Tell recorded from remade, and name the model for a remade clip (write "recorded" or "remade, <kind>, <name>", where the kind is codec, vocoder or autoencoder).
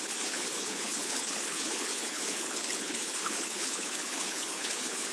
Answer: remade, codec, HILCodec